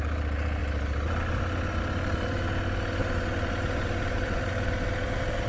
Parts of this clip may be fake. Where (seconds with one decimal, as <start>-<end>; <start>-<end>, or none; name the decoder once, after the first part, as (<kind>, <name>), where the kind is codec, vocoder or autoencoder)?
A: 3.0-4.5 (vocoder, BigVGAN v2)